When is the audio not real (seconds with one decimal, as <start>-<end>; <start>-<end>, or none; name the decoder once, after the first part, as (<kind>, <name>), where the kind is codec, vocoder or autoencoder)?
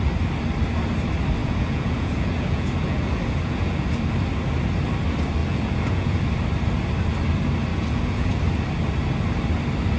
1.4-4.0 (vocoder, Vocos); 5.4-6.2; 7.7-8.4